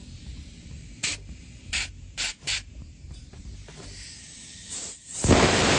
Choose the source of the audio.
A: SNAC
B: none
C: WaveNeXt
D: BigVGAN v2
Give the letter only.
D